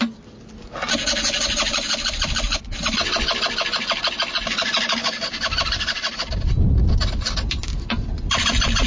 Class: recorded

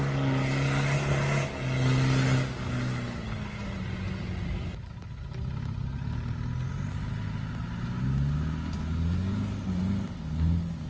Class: recorded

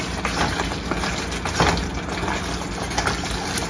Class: recorded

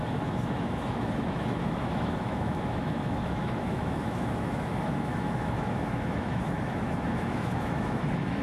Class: remade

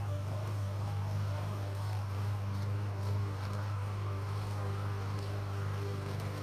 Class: remade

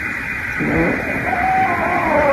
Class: recorded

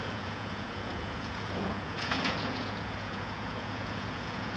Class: remade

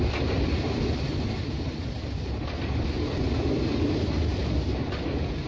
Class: recorded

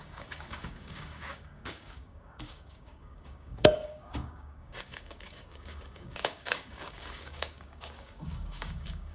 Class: remade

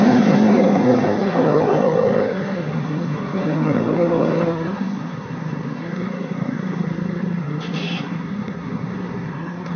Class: remade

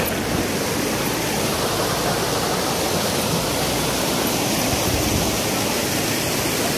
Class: recorded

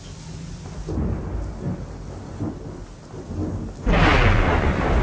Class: recorded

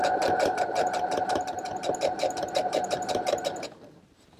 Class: remade